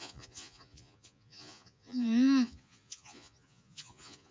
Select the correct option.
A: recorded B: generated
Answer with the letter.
B